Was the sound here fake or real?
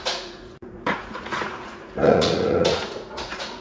fake